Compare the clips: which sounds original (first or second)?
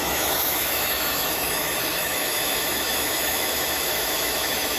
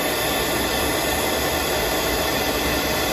second